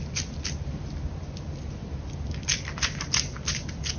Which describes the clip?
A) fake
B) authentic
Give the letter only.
B